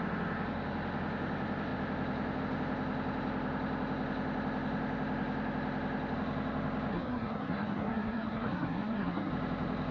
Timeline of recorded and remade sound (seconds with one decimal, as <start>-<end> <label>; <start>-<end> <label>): 0.0-6.9 recorded; 6.9-9.3 remade; 9.3-9.9 recorded